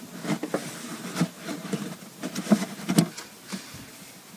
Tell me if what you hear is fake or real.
real